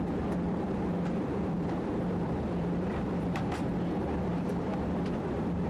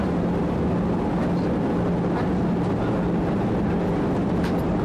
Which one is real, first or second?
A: second